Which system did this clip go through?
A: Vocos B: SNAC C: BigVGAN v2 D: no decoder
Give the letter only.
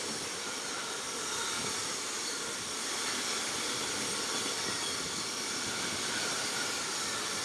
C